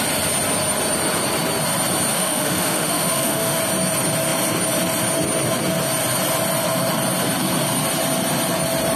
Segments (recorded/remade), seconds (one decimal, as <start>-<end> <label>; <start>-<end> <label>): 0.0-2.1 recorded; 2.1-3.6 remade; 3.6-9.0 recorded